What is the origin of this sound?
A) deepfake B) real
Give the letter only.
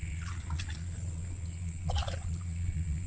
A